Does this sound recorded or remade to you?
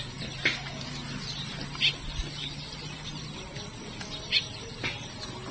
recorded